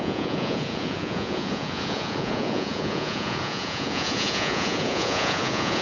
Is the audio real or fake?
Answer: fake